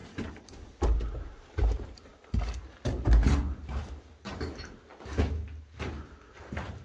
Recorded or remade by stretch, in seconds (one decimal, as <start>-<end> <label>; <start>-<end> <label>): 0.0-1.1 recorded; 1.1-2.1 remade; 2.1-3.6 recorded; 3.6-4.9 remade; 4.9-6.3 recorded; 6.3-6.8 remade